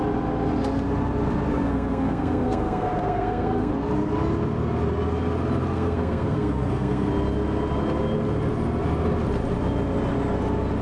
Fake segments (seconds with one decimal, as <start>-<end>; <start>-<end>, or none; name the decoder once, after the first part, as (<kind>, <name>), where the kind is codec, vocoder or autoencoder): 1.5-3.7 (codec, SNAC); 5.7-7.1